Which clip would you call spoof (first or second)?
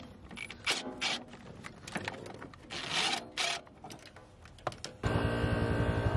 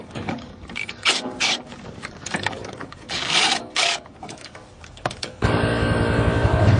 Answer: second